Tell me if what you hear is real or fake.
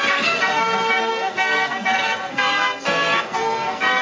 fake